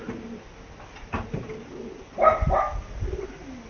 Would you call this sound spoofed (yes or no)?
no